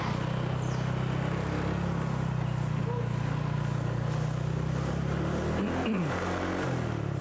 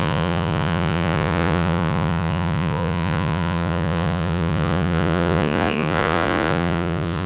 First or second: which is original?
first